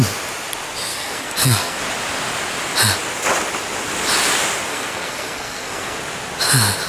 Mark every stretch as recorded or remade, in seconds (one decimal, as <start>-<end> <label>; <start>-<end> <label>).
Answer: 0.0-0.9 recorded; 0.9-1.8 remade; 1.8-4.7 recorded; 4.7-6.0 remade; 6.0-6.9 recorded